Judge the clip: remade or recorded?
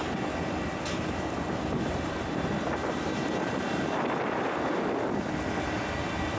recorded